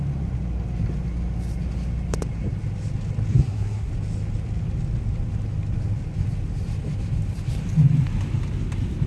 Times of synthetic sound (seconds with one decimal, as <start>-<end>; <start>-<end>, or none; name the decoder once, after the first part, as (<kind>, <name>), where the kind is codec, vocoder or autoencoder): 3.3-3.9 (codec, SNAC)